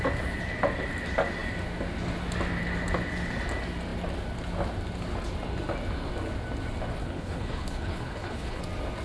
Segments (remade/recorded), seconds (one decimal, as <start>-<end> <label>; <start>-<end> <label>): 0.0-7.0 recorded; 7.0-8.6 remade; 8.6-9.0 recorded